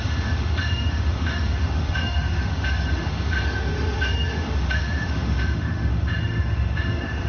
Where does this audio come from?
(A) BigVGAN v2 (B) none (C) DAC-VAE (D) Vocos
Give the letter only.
C